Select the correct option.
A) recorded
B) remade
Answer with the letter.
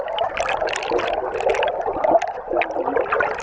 A